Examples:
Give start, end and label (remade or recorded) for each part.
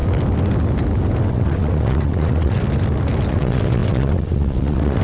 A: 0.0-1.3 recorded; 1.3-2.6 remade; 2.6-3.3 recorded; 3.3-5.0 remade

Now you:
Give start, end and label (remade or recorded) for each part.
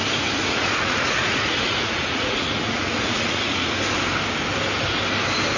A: 0.0-0.4 recorded; 0.4-3.8 remade; 3.8-5.6 recorded